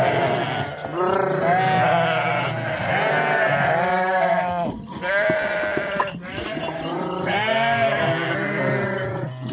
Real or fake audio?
real